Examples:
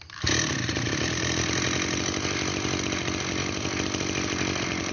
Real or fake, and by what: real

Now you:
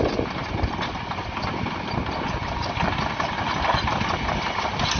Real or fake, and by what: real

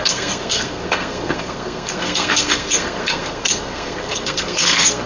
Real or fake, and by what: fake, codec, SNAC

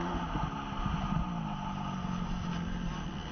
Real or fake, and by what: real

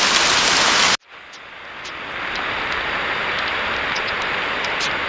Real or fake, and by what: real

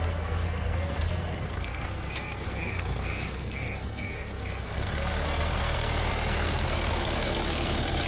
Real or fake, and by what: fake, codec, SNAC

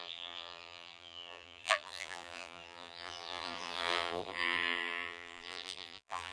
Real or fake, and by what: fake, vocoder, BigVGAN v2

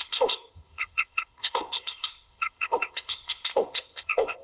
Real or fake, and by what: fake, codec, ZipCodec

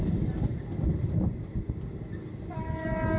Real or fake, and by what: real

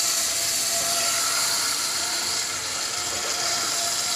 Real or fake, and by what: fake, vocoder, BigVGAN v2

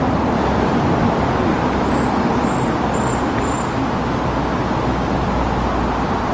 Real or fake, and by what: real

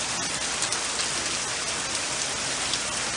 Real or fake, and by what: real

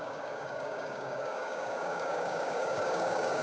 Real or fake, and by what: fake, codec, DAC